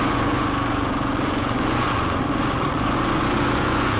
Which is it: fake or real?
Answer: fake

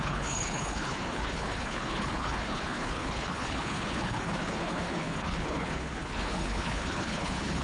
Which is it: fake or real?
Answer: fake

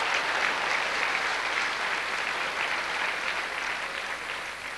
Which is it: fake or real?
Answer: real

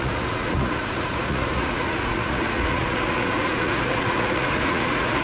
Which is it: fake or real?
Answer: fake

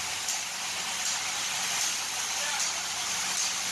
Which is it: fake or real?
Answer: real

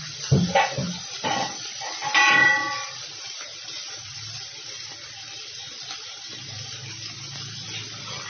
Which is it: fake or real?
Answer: real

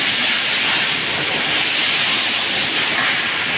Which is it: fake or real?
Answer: real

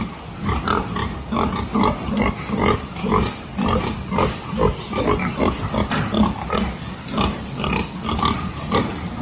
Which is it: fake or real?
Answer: real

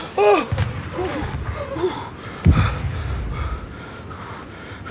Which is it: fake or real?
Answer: real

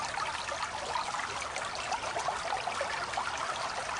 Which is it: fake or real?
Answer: real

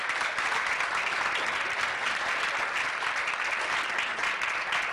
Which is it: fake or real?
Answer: real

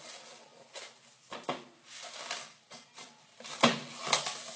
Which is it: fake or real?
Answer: real